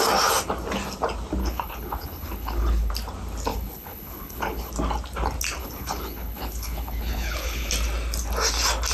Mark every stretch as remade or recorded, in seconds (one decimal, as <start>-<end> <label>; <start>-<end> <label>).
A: 0.0-1.4 recorded; 1.4-2.9 remade; 2.9-3.5 recorded; 3.5-4.7 remade; 4.7-5.6 recorded; 5.6-7.7 remade; 7.7-8.9 recorded